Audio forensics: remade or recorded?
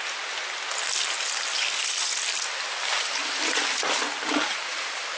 recorded